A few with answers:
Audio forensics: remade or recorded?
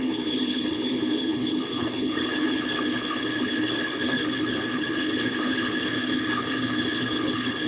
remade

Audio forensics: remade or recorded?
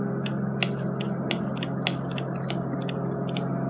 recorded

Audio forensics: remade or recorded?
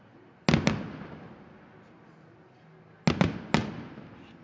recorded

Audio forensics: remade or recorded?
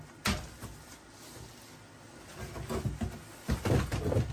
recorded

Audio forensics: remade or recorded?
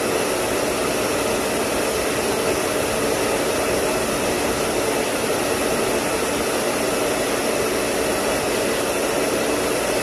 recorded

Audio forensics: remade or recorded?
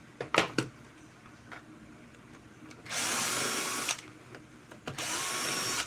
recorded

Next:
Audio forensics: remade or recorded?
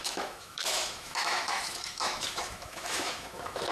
remade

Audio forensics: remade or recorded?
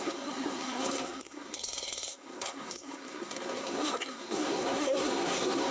remade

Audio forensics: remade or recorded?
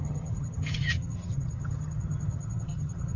remade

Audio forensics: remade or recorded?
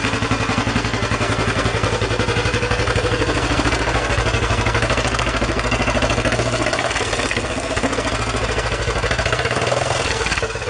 remade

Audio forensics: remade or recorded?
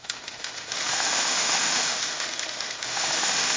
remade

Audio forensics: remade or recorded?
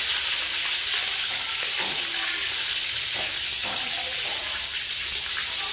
recorded